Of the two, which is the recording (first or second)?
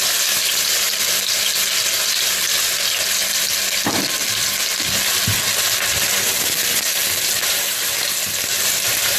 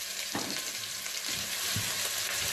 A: first